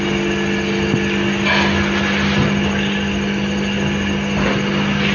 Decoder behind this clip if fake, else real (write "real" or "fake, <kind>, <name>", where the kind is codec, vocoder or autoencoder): real